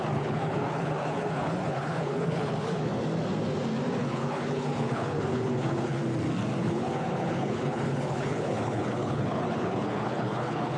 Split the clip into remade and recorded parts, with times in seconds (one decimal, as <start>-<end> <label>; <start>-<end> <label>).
0.0-2.9 remade; 2.9-4.0 recorded; 4.0-6.0 remade; 6.0-6.6 recorded; 6.6-10.8 remade